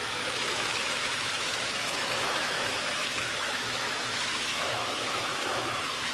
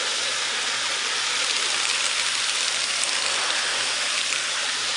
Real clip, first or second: second